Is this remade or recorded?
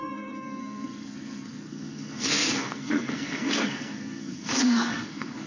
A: remade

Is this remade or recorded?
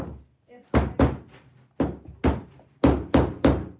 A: recorded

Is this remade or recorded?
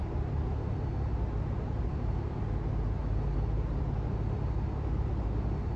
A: recorded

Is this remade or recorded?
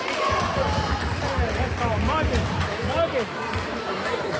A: recorded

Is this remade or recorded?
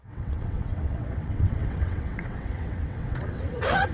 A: remade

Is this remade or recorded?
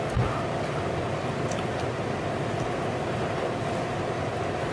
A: recorded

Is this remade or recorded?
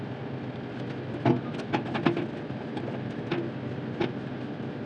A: recorded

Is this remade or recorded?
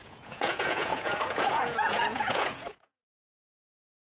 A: remade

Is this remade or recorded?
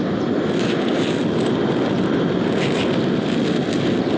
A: recorded